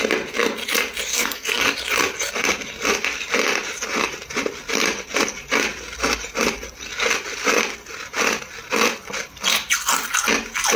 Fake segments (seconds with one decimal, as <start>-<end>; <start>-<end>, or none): 1.1-1.6